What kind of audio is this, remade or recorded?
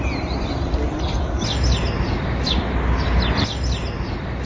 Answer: recorded